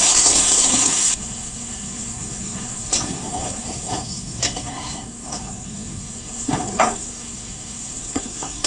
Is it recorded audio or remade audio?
remade